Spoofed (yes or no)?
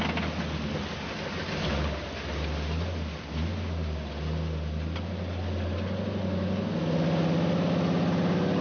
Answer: no